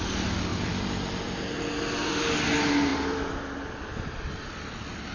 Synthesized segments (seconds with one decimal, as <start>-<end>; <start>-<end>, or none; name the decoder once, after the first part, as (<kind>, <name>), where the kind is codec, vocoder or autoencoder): 0.5-1.7 (vocoder, BigVGAN v2)